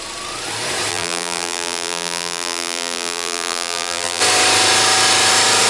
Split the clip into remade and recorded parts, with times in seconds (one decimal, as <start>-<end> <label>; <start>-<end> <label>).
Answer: 0.0-0.9 recorded; 0.9-4.2 remade; 4.2-5.7 recorded